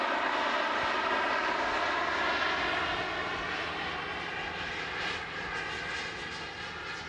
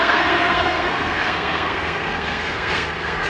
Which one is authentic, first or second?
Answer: first